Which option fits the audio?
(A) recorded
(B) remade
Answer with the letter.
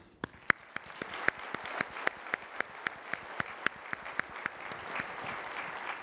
A